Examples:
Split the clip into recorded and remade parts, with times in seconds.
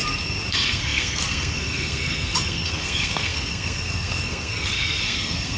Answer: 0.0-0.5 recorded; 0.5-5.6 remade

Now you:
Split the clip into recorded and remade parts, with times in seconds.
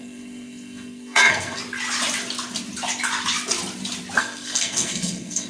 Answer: 0.0-1.6 remade; 1.6-4.2 recorded; 4.2-5.5 remade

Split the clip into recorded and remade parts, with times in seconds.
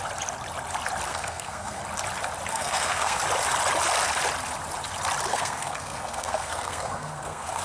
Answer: 0.0-1.1 recorded; 1.1-1.8 remade; 1.8-2.5 recorded; 2.5-3.2 remade; 3.2-5.3 recorded; 5.3-7.6 remade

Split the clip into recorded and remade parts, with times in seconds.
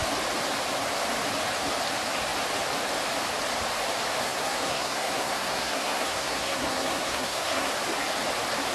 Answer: 0.0-4.2 recorded; 4.2-7.7 remade; 7.7-8.7 recorded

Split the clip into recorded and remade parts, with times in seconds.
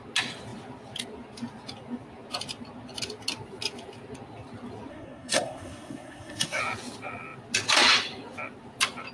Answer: 0.0-4.9 recorded; 4.9-6.6 remade; 6.6-9.1 recorded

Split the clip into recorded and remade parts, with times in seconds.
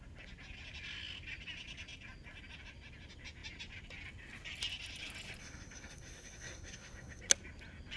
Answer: 0.0-5.4 recorded; 5.4-7.2 remade; 7.2-8.0 recorded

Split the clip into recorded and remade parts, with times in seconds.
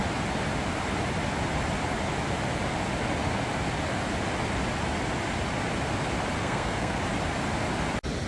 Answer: 0.0-6.4 recorded; 6.4-7.0 remade; 7.0-8.3 recorded